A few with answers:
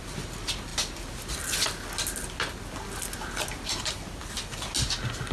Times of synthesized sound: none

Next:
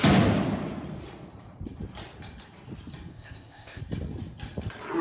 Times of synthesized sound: 3.1-3.8 (codec, ZipCodec)

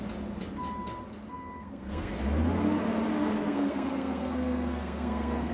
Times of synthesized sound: 1.3-2.1 (codec, SNAC); 3.2-5.5

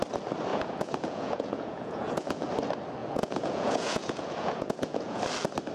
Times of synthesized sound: 0.5-2.5 (vocoder, Vocos); 3.0-5.2

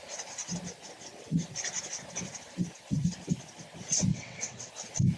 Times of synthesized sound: 4.1-4.7 (vocoder, WaveNeXt)

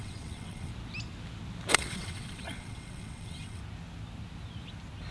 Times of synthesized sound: 0.0-0.7 (vocoder, WaveNeXt); 1.7-3.6

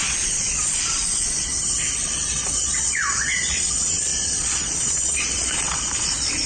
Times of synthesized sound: 0.0-1.5 (vocoder, Vocos); 2.3-6.5

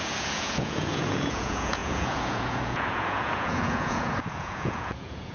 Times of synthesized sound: 0.0-5.3 (vocoder, Vocos)